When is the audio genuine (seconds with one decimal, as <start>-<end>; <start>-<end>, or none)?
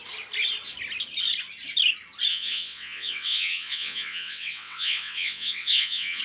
0.0-2.3